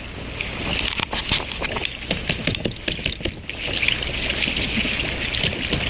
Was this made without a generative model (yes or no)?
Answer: yes